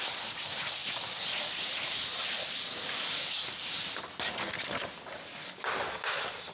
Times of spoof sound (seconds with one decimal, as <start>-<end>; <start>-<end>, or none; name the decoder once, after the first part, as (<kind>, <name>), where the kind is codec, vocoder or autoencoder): none